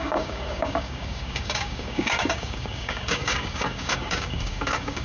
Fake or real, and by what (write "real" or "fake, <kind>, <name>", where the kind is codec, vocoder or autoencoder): fake, codec, DAC